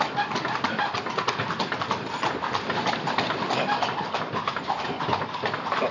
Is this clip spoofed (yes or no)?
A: no